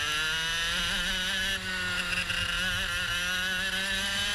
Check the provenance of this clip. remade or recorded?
recorded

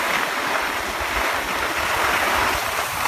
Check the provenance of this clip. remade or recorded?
recorded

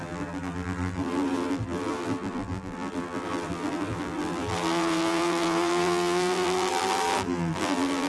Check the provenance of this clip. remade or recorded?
remade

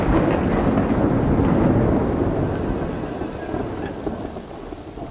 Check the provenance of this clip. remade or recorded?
recorded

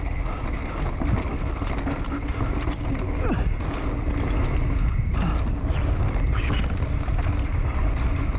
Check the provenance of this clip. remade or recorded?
recorded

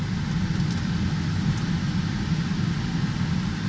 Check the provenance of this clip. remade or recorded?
recorded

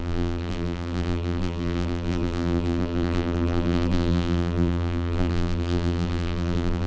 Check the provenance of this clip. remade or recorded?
remade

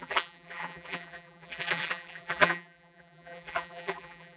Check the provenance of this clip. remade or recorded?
remade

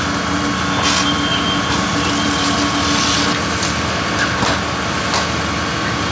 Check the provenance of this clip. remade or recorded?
recorded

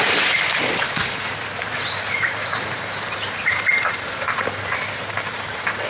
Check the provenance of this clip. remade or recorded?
remade